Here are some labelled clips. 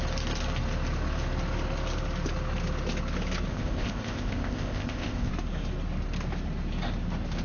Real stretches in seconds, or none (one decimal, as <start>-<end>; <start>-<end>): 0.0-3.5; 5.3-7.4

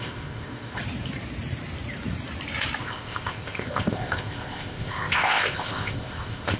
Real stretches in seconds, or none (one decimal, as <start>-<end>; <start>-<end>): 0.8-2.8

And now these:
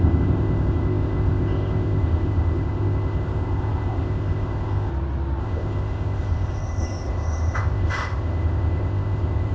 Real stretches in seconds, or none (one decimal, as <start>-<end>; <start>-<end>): 4.9-5.4

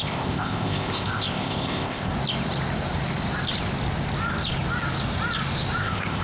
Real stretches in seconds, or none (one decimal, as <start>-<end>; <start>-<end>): 2.1-5.8

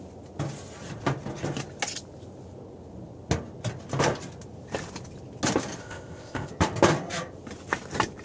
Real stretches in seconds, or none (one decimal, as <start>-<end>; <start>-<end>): 0.0-5.8; 6.5-8.2

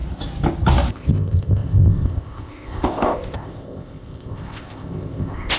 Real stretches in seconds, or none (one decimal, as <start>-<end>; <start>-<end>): 0.0-0.9

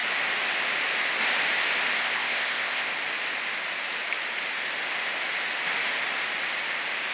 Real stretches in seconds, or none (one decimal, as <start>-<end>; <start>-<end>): 0.0-2.0; 2.9-7.1